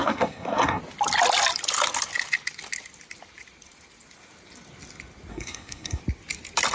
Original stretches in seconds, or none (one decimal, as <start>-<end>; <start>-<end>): 0.8-5.3; 6.0-6.7

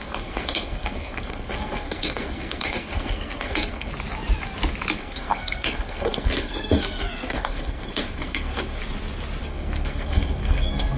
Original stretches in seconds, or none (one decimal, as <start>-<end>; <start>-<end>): 3.9-5.0; 8.8-9.4

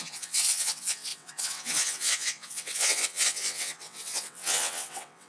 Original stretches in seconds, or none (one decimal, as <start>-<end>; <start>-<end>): none